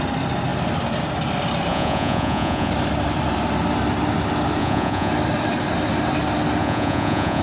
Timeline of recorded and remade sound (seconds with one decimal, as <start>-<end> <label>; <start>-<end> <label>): 0.0-1.7 recorded; 1.7-2.7 remade; 2.7-4.6 recorded; 4.6-5.1 remade; 5.1-6.6 recorded; 6.6-7.4 remade